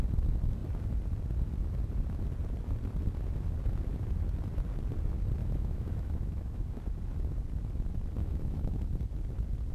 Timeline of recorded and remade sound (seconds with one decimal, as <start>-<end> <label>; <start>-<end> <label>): 0.0-5.4 recorded; 5.4-6.8 remade; 6.8-8.2 recorded; 8.2-8.8 remade; 8.8-9.7 recorded